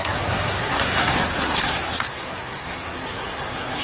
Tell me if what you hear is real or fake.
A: fake